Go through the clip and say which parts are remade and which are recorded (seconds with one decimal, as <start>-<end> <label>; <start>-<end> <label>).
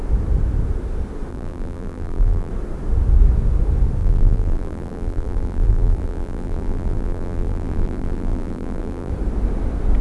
0.0-1.3 recorded; 1.3-2.5 remade; 2.5-4.0 recorded; 4.0-9.1 remade; 9.1-10.0 recorded